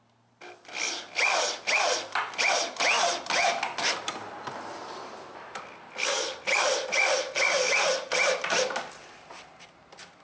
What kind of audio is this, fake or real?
real